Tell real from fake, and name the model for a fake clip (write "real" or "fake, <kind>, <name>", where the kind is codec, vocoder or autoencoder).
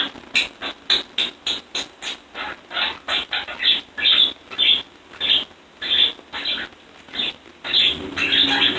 real